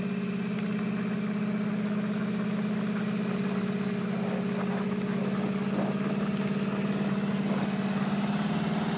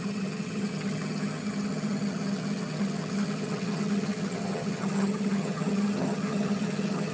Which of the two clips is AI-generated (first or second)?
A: second